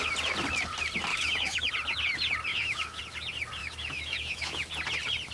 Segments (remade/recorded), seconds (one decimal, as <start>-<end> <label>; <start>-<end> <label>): 0.0-1.1 recorded; 1.1-1.7 remade; 1.7-2.5 recorded; 2.5-3.0 remade; 3.0-3.6 recorded; 3.6-4.6 remade; 4.6-5.3 recorded